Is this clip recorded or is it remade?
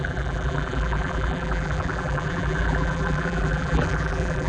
remade